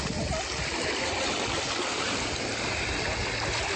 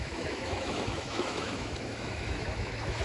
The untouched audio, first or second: first